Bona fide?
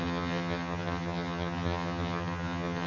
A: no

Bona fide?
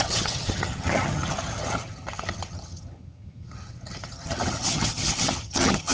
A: no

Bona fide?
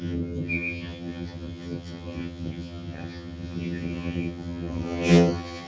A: no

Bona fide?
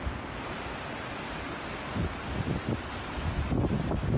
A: yes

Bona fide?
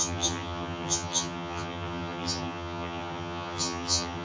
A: no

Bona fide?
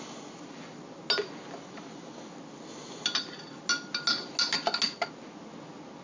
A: yes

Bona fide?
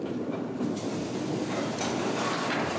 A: yes